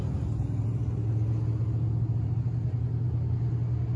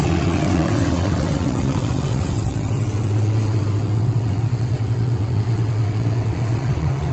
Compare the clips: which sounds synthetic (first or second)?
second